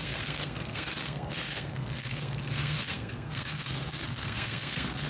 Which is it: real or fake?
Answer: fake